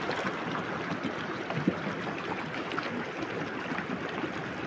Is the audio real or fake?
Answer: real